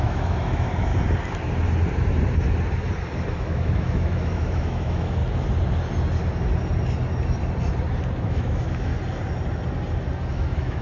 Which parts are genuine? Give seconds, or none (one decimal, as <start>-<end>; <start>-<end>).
0.9-3.3; 5.2-8.2; 8.9-10.3